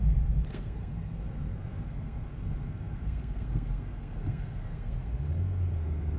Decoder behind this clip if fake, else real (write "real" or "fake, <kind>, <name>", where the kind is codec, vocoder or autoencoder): fake, codec, SNAC